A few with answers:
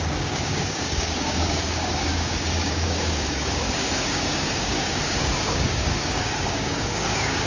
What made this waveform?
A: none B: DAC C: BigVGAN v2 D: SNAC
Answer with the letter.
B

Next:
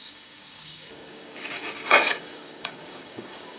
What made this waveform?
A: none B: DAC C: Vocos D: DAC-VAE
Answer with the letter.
B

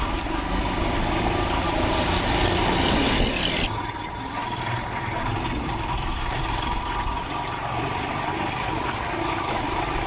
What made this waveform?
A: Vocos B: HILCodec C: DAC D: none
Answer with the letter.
D